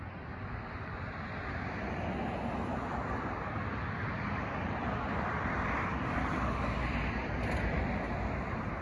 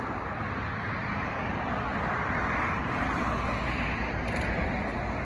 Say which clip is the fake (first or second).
first